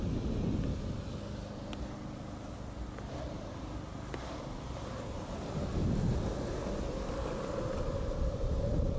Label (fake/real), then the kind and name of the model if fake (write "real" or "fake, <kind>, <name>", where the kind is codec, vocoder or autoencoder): real